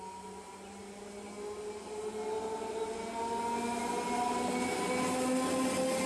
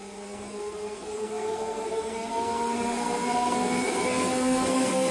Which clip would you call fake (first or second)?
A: second